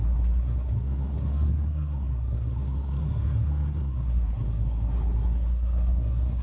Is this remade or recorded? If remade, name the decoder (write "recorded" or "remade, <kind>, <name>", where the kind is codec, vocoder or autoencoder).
remade, codec, SNAC